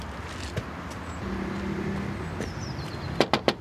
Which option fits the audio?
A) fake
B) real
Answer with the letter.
B